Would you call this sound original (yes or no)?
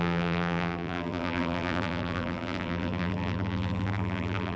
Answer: no